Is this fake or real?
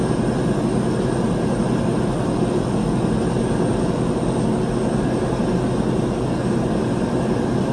real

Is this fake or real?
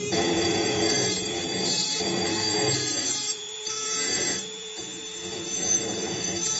fake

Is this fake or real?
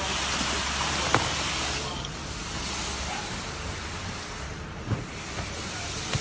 real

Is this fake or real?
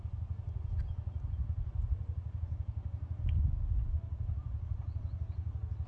real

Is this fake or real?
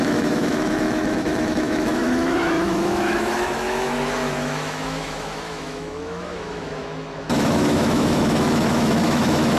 fake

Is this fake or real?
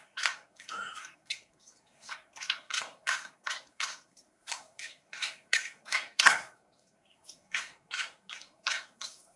fake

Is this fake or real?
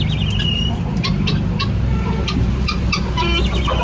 real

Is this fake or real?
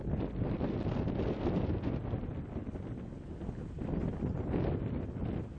real